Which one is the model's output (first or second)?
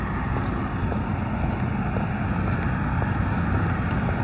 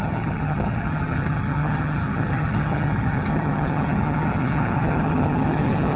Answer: second